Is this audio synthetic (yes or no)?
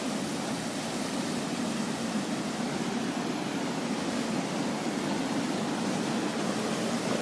no